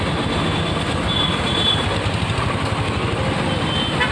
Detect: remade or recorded recorded